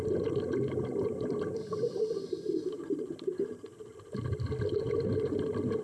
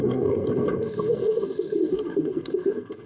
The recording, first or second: first